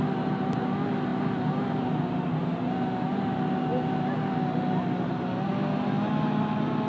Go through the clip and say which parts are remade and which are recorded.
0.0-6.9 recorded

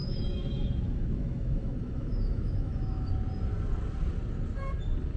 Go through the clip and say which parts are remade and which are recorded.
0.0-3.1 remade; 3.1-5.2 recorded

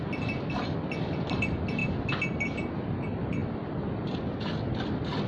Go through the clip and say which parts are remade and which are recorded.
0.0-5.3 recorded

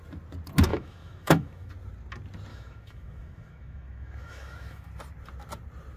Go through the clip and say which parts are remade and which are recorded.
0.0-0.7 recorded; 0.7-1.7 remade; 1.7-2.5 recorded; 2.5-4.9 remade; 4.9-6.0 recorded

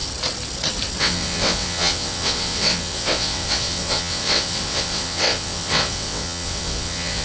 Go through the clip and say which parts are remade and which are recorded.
0.0-1.0 recorded; 1.0-7.2 remade

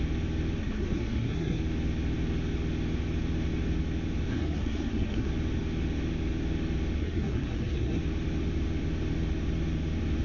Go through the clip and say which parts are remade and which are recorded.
0.0-0.6 recorded; 0.6-1.6 remade; 1.6-4.3 recorded; 4.3-5.3 remade; 5.3-7.0 recorded; 7.0-8.0 remade; 8.0-10.2 recorded

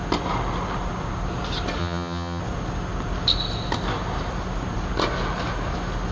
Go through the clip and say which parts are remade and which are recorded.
0.0-1.8 recorded; 1.8-2.4 remade; 2.4-6.1 recorded

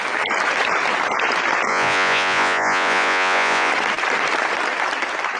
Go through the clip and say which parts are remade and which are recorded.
0.0-1.7 recorded; 1.7-3.7 remade; 3.7-5.4 recorded